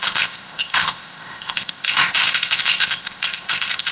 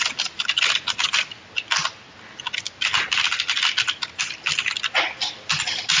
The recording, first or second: second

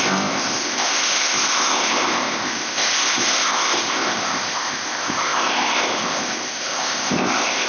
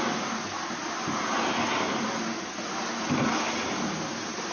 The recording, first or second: second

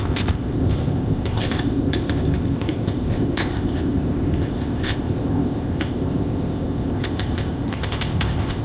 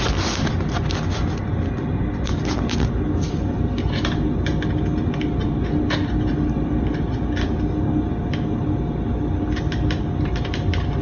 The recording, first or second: second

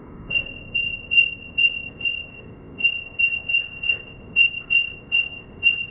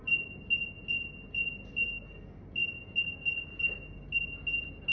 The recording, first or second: second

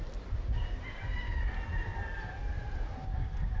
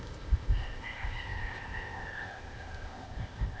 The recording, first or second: first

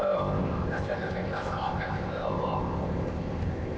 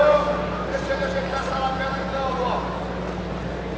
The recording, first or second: second